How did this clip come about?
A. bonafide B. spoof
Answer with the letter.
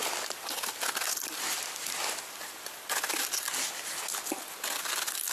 A